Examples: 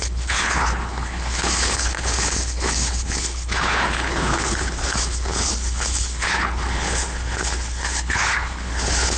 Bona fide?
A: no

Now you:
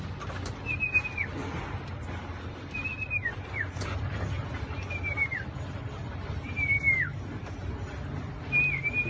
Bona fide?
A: yes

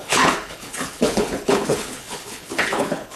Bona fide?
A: no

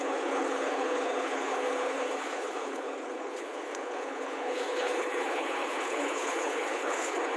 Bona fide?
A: no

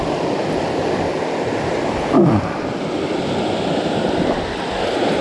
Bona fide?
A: yes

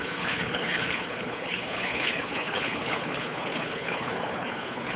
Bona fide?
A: no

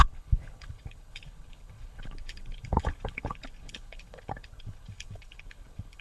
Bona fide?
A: no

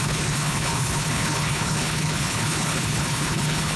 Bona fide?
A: no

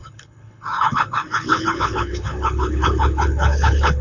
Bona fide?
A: no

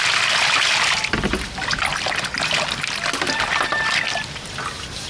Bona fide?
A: yes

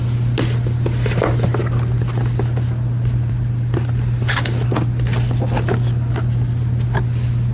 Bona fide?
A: yes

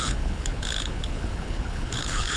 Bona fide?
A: no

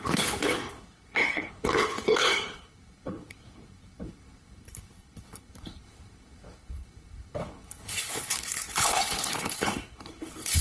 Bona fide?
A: no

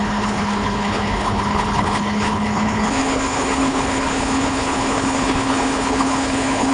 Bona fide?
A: no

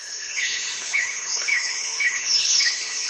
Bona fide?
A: no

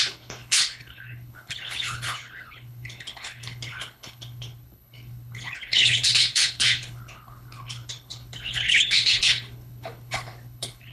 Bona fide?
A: no